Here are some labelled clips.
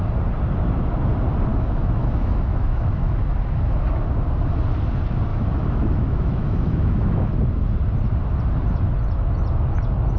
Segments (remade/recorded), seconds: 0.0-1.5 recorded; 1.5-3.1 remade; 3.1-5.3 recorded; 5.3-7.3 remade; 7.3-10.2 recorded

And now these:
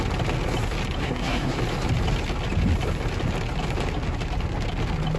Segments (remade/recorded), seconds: 0.0-1.0 recorded; 1.0-1.6 remade; 1.6-5.2 recorded

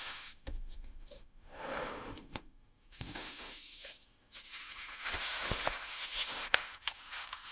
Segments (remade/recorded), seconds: 0.0-7.5 remade

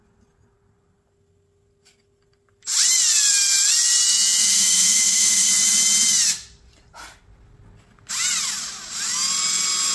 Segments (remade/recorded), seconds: 0.0-4.5 recorded; 4.5-5.5 remade; 5.5-9.9 recorded

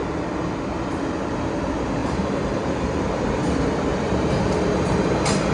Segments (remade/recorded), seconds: 0.0-2.0 recorded; 2.0-5.5 remade

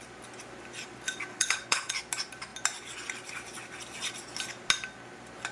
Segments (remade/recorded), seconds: 0.0-1.3 recorded; 1.3-1.9 remade; 1.9-5.5 recorded

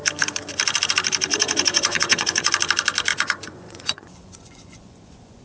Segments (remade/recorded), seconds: 0.0-1.3 recorded; 1.3-2.5 remade; 2.5-3.1 recorded; 3.1-5.4 remade

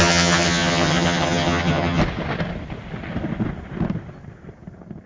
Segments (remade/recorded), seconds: 0.0-2.0 remade; 2.0-5.1 recorded